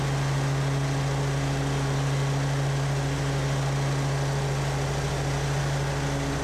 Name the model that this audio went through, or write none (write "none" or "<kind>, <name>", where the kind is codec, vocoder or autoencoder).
none